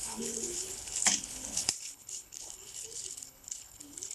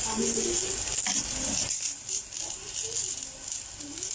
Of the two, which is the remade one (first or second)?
first